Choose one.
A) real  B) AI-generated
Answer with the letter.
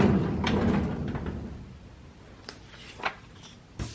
A